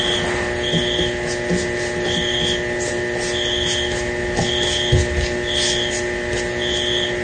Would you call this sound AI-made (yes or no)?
no